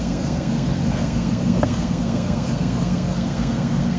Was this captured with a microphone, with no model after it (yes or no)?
no